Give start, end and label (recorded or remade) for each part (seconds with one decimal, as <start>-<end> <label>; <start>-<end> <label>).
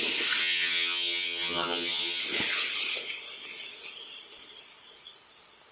0.0-0.4 recorded; 0.4-2.2 remade; 2.2-5.7 recorded